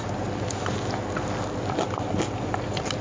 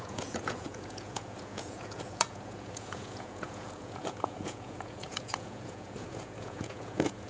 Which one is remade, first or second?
second